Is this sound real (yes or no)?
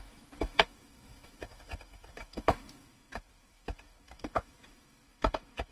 no